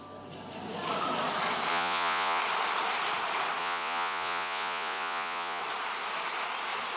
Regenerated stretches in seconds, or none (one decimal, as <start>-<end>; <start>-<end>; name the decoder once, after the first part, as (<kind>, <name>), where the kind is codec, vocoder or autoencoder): 1.7-2.4 (vocoder, Vocos); 3.6-5.6